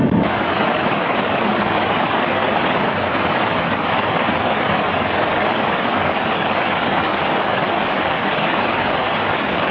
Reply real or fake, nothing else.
fake